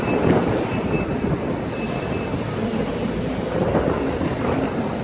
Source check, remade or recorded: recorded